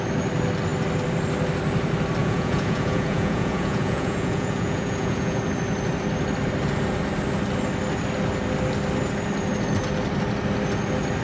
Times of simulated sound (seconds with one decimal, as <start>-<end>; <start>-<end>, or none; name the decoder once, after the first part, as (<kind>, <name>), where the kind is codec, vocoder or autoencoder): 2.2-5.4 (vocoder, Vocos)